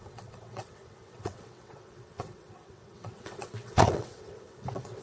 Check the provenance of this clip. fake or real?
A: fake